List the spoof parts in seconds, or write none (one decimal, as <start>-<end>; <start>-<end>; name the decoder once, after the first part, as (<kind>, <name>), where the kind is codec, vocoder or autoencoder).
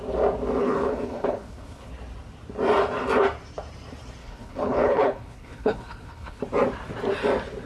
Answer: 0.6-1.9 (codec, HILCodec); 4.2-6.4